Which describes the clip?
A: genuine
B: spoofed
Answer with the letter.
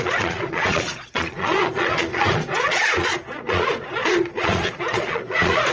B